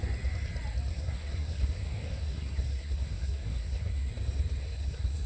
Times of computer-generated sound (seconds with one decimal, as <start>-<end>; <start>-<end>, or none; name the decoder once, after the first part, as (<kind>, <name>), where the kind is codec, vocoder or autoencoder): 0.9-4.1 (codec, SNAC); 4.6-5.3

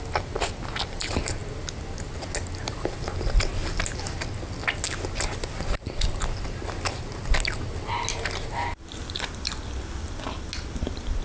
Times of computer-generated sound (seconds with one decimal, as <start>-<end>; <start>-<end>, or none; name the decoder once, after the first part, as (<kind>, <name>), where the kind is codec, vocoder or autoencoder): none

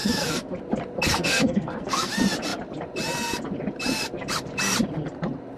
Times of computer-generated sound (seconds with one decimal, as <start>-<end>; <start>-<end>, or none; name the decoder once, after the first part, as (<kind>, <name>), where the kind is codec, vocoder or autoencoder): 0.0-0.5 (codec, SNAC); 1.1-2.1

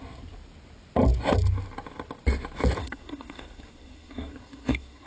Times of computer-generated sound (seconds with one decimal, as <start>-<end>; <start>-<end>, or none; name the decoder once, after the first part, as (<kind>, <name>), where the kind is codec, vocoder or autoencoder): 2.8-5.1 (codec, SNAC)

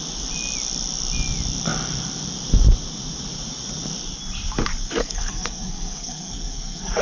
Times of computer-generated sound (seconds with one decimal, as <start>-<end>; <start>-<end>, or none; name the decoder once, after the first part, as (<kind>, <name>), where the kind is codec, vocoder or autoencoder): 5.0-7.0 (codec, SNAC)